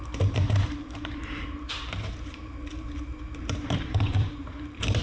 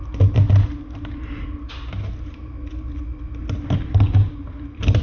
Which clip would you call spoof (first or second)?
first